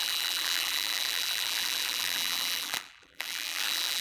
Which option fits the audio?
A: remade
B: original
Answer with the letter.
A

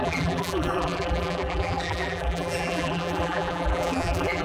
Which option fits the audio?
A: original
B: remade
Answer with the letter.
B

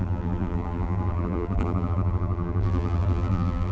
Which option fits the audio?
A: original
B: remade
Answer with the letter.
B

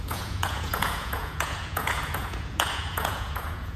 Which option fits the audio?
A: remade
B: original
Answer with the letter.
A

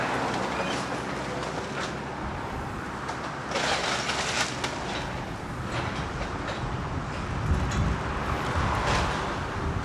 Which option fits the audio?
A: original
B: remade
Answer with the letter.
A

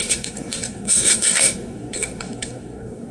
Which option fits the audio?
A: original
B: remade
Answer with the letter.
B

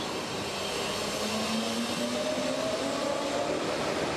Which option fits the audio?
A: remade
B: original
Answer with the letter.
B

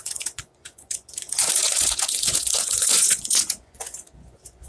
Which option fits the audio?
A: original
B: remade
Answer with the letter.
B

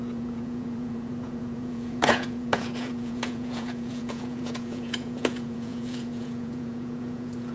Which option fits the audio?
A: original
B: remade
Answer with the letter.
B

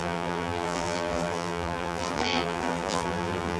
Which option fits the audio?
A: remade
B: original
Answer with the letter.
A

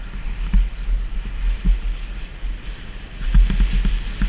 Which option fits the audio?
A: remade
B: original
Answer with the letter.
B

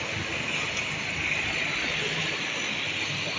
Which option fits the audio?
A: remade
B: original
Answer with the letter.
B